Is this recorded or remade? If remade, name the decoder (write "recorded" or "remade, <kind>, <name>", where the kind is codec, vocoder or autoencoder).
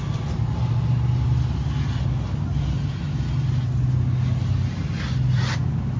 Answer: recorded